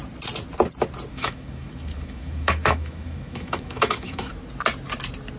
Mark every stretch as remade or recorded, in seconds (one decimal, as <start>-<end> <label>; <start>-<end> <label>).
0.0-1.1 recorded; 1.1-4.3 remade; 4.3-5.4 recorded